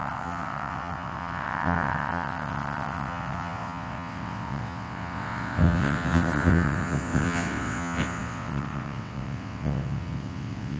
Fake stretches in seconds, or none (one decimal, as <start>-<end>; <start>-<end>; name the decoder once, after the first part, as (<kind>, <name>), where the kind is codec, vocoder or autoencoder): 0.0-10.8 (vocoder, WaveNeXt)